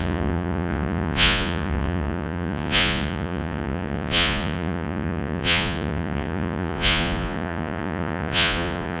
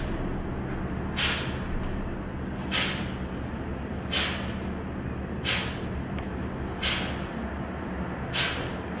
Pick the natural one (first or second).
second